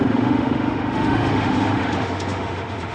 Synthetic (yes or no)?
yes